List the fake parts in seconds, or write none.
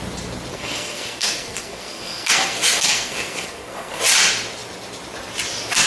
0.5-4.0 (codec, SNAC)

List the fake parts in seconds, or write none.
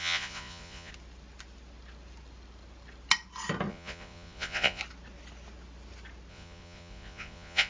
0.0-0.9 (vocoder, Vocos); 3.7-4.8; 6.3-7.7